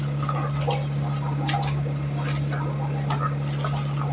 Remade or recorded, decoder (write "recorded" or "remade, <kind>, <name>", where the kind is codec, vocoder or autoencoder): recorded